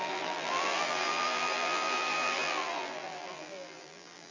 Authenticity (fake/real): fake